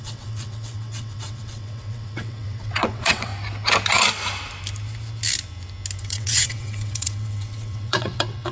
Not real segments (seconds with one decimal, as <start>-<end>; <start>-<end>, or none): 0.0-3.3; 6.0-8.5